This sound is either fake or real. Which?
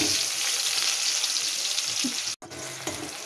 real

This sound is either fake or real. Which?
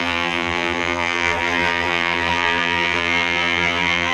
fake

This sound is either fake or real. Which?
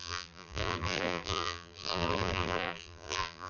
fake